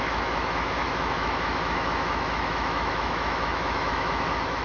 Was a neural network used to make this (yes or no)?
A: yes